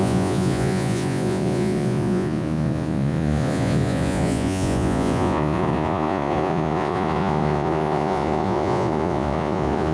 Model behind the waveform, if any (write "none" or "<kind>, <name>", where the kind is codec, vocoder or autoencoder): vocoder, Vocos